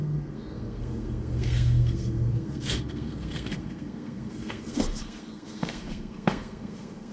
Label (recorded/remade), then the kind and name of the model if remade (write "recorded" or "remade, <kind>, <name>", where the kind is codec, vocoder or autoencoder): remade, codec, SNAC